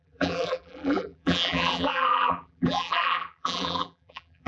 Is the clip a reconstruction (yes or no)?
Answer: yes